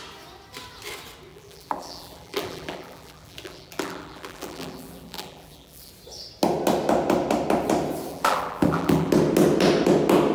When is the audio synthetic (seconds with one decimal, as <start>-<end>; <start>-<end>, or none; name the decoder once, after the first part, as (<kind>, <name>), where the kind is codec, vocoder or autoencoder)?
1.3-5.9 (vocoder, BigVGAN v2); 8.1-9.1